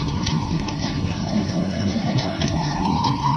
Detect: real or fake fake